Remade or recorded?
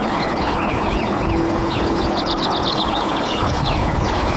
remade